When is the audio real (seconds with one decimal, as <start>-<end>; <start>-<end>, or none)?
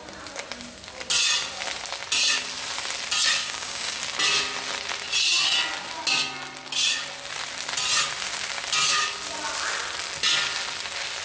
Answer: 0.0-3.4; 4.0-11.2